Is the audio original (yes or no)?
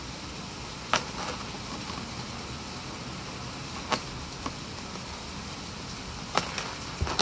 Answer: yes